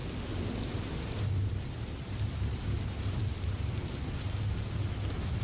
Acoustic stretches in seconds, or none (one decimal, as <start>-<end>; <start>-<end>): 0.0-5.4